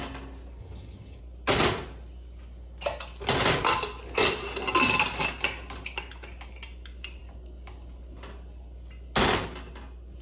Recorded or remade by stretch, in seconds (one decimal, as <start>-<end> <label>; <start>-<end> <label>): 0.0-0.6 recorded; 0.6-1.2 remade; 1.2-10.2 recorded